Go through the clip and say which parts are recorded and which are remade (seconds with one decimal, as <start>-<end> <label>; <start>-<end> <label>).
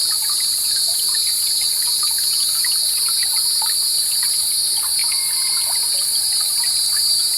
0.0-3.9 recorded; 3.9-5.0 remade; 5.0-6.5 recorded; 6.5-7.4 remade